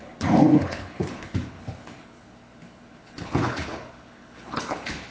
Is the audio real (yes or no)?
no